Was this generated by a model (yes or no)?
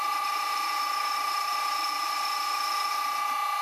no